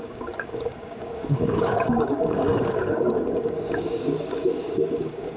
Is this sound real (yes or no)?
no